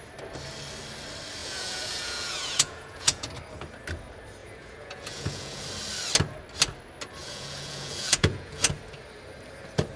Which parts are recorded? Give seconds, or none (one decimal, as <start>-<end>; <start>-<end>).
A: 0.0-1.4; 3.3-4.4; 5.7-7.2; 8.7-10.0